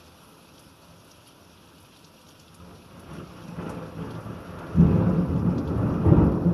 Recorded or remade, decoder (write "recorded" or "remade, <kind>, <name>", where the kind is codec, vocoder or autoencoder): recorded